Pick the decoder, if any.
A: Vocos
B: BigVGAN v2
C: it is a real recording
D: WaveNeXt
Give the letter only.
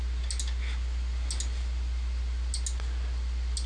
C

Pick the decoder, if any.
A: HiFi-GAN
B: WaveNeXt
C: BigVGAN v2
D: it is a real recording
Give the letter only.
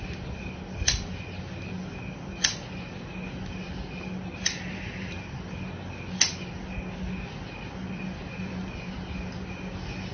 D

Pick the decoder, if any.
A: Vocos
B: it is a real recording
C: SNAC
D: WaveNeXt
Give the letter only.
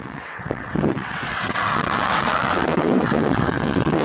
D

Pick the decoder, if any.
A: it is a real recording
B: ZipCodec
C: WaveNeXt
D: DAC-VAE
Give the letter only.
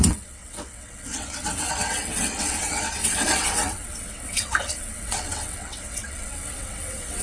C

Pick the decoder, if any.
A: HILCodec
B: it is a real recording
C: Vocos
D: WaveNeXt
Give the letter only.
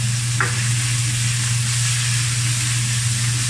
B